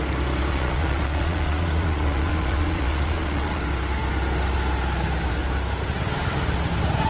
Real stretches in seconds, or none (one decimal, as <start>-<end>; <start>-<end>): 0.0-0.5; 3.6-7.1